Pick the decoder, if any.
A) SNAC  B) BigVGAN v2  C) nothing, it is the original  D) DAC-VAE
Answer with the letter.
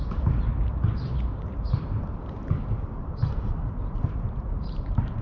B